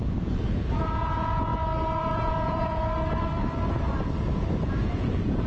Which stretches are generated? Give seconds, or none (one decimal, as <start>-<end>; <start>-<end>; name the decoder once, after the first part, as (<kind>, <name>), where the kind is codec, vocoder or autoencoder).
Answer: 0.0-1.5 (vocoder, Vocos); 2.0-2.8; 4.8-5.5